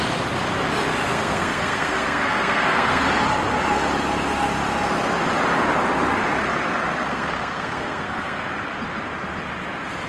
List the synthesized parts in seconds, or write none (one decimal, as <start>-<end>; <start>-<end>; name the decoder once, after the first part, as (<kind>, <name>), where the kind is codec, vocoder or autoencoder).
1.1-3.0 (codec, SNAC); 7.1-8.5